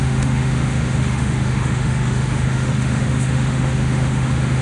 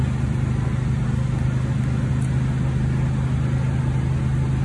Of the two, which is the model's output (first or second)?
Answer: first